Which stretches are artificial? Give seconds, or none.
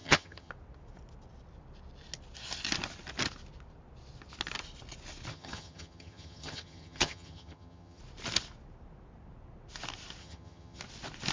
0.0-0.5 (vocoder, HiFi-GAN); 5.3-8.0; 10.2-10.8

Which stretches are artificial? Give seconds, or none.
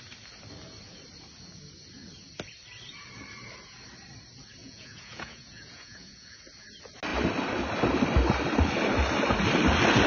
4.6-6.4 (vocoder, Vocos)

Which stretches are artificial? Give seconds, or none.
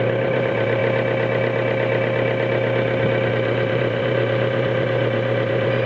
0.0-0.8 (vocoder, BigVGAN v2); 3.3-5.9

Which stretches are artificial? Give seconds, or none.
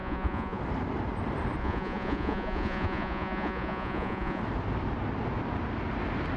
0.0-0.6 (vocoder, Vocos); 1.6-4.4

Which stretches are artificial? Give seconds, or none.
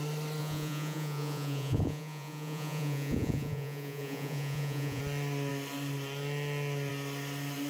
0.4-5.0 (vocoder, Vocos)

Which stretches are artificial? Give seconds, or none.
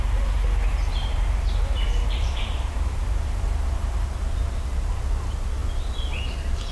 0.9-4.9 (vocoder, BigVGAN v2)